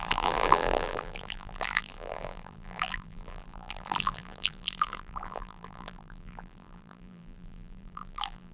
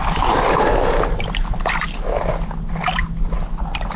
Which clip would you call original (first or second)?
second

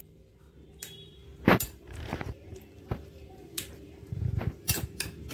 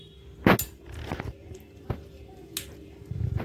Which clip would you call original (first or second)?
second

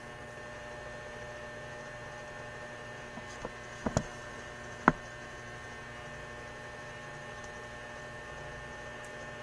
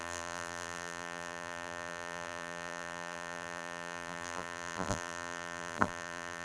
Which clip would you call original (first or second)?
first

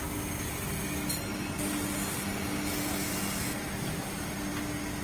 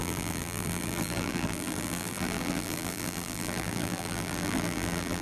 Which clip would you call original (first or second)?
first